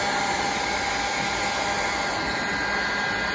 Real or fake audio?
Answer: real